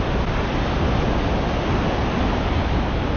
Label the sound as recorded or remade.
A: recorded